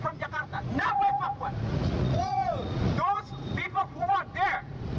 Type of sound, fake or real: fake